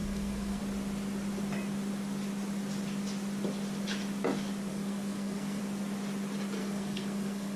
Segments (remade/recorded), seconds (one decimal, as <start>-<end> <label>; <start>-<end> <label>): 0.0-0.6 remade; 0.6-4.7 recorded; 4.7-5.6 remade; 5.6-6.6 recorded; 6.6-7.6 remade